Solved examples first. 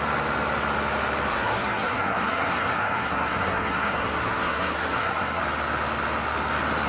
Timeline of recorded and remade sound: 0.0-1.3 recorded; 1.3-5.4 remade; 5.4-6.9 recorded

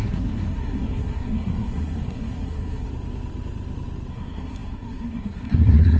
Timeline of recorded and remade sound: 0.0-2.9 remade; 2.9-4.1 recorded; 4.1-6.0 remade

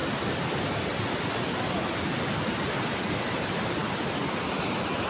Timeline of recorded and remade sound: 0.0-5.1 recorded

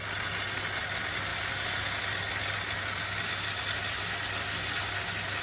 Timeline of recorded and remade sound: 0.0-5.4 recorded

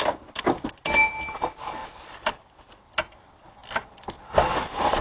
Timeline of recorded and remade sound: 0.0-5.0 recorded

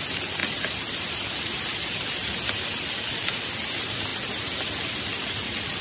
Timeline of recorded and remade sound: 0.0-5.8 recorded

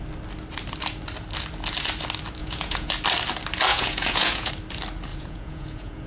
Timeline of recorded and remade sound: 0.0-2.4 recorded; 2.4-2.9 remade; 2.9-3.7 recorded; 3.7-4.5 remade; 4.5-5.1 recorded; 5.1-6.1 remade

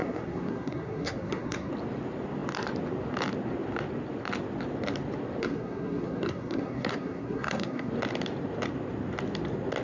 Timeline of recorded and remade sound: 0.0-1.7 remade; 1.7-5.4 recorded; 5.4-7.9 remade; 7.9-9.8 recorded